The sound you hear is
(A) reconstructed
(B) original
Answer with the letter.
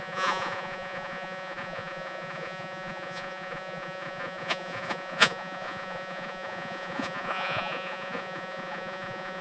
A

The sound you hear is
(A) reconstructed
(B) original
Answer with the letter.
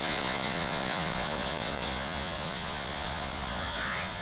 A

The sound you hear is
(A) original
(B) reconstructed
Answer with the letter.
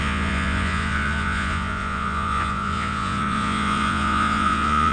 B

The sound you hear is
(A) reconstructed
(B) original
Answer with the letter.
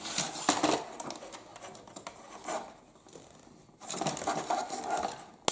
B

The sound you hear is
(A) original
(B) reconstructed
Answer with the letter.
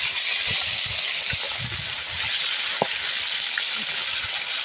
A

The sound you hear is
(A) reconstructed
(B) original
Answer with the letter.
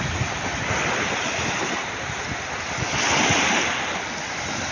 B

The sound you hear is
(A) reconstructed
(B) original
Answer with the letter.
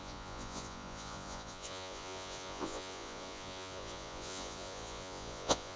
A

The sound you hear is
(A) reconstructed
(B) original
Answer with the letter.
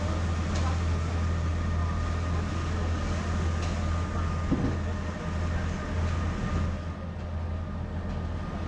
B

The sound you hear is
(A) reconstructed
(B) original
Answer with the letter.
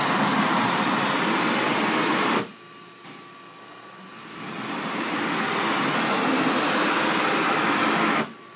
B